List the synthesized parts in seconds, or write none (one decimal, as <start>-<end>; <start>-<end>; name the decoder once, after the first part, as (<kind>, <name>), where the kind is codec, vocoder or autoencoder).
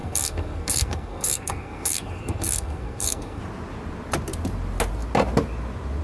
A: 0.0-3.4 (codec, SNAC)